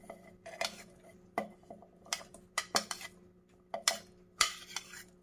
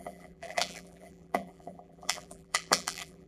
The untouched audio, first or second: first